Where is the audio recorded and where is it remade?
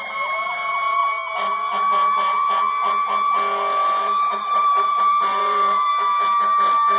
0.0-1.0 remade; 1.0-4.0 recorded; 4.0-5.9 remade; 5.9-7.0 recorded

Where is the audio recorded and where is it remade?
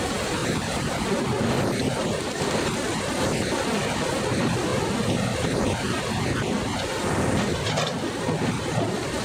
0.0-0.4 recorded; 0.4-0.9 remade; 0.9-9.2 recorded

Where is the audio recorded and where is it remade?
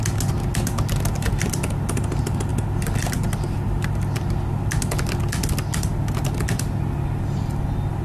0.0-8.0 recorded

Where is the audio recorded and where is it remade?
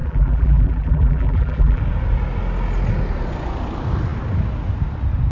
0.0-1.8 remade; 1.8-5.3 recorded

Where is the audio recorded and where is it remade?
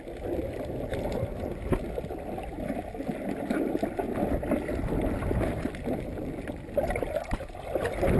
0.0-0.9 recorded; 0.9-2.5 remade; 2.5-5.2 recorded; 5.2-6.2 remade; 6.2-8.2 recorded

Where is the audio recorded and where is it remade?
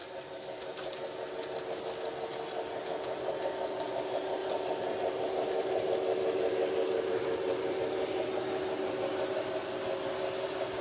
0.0-10.8 recorded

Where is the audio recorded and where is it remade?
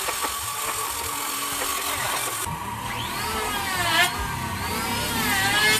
0.0-5.8 recorded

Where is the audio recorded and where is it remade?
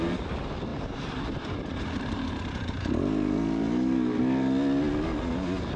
0.0-0.7 recorded; 0.7-4.2 remade; 4.2-5.8 recorded